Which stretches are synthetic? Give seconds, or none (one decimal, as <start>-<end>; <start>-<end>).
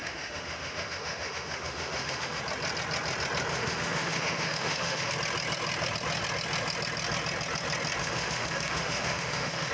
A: 0.0-2.4; 3.5-5.1; 8.0-9.7